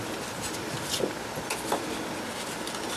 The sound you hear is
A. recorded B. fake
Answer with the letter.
A